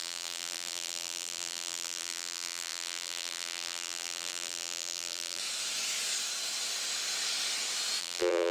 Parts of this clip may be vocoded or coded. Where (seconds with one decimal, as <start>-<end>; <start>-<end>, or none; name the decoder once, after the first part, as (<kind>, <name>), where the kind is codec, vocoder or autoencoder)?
0.0-5.4 (vocoder, BigVGAN v2); 8.0-8.5